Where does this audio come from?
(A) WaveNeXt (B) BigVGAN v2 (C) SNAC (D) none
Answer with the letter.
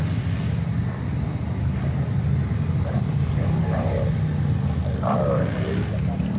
D